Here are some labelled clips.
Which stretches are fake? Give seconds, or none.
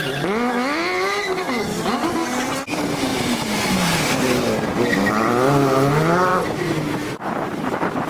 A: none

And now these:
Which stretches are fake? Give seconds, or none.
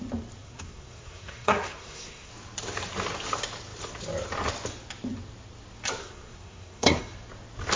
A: 0.4-2.3 (codec, SNAC); 6.0-7.0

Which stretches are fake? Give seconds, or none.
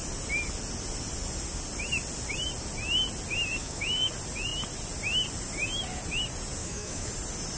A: 3.6-4.1 (autoencoder, DAC-VAE); 6.6-7.1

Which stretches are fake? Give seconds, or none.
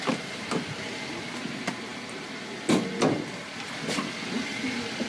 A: none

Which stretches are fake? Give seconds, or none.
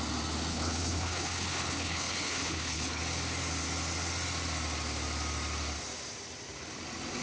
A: 0.5-3.0 (codec, HILCodec)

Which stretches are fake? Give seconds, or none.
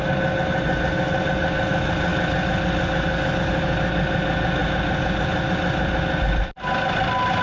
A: none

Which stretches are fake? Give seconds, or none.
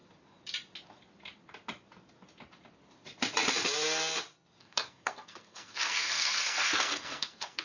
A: 4.6-7.6 (codec, SNAC)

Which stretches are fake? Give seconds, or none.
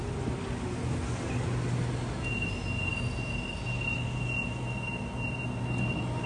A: none